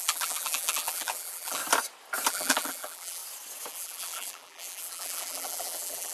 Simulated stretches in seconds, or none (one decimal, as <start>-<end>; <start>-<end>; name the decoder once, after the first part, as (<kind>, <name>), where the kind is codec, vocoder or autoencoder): 0.0-1.6 (vocoder, BigVGAN v2); 2.3-3.2; 3.7-6.1